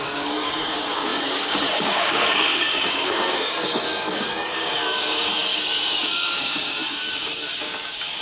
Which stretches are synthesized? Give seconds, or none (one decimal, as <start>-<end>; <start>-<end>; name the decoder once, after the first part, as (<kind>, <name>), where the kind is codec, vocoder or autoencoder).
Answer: 0.0-8.2 (codec, DAC)